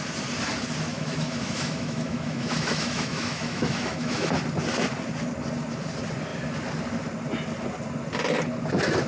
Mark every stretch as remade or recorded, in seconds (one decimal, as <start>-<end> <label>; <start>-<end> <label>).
0.0-0.9 recorded; 0.9-4.3 remade; 4.3-9.1 recorded